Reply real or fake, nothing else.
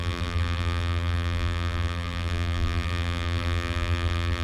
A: fake